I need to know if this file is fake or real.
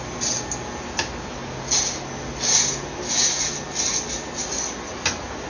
real